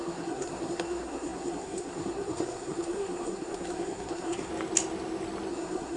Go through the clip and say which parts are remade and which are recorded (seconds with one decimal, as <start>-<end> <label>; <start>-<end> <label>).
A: 0.0-4.5 remade; 4.5-5.5 recorded; 5.5-6.0 remade